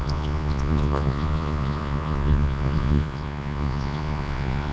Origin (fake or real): fake